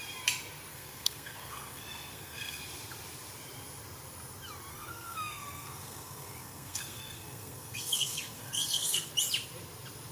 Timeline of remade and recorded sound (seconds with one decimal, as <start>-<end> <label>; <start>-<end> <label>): 0.0-0.7 recorded; 0.7-2.6 remade; 2.6-4.7 recorded; 4.7-9.1 remade; 9.1-10.1 recorded